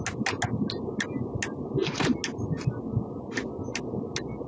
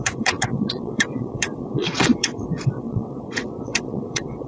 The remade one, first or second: second